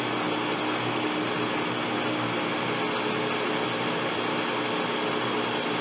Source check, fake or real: real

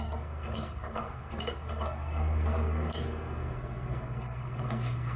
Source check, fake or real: fake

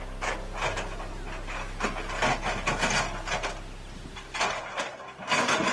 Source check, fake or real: real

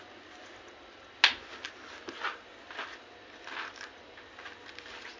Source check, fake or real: real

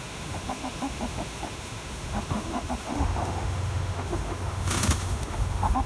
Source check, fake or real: fake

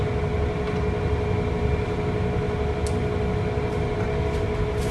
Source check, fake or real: real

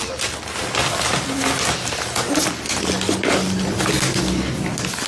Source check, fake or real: real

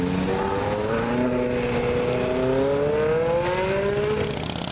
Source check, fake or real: real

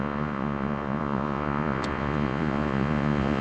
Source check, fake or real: fake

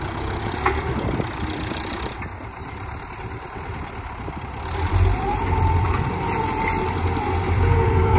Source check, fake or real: fake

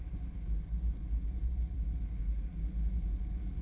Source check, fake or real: real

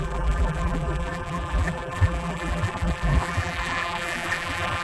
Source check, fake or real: fake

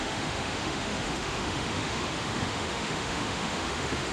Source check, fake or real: fake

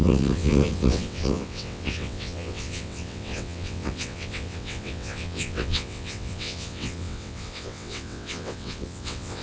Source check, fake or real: fake